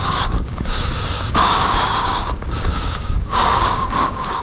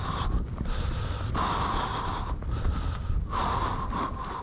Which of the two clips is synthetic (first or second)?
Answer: first